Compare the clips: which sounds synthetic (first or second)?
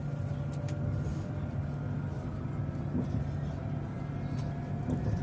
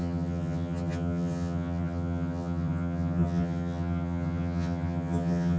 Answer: second